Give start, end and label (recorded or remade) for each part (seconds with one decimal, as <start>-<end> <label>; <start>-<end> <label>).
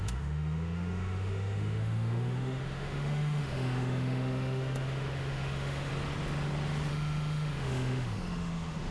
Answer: 0.0-5.9 remade; 5.9-6.9 recorded; 6.9-8.9 remade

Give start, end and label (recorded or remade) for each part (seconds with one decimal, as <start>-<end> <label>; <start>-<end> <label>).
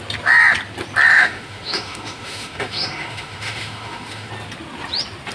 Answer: 0.0-1.1 recorded; 1.1-4.3 remade; 4.3-5.3 recorded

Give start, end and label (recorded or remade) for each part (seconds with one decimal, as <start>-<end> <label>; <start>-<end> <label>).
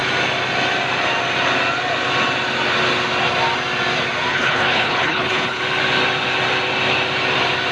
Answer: 0.0-4.3 recorded; 4.3-5.6 remade; 5.6-7.7 recorded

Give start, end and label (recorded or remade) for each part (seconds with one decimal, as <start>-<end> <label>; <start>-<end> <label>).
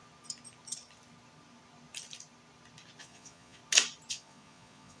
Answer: 0.0-3.0 recorded; 3.0-3.6 remade; 3.6-4.1 recorded; 4.1-5.0 remade